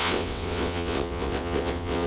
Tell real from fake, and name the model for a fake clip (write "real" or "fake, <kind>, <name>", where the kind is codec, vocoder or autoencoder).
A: fake, vocoder, WaveNeXt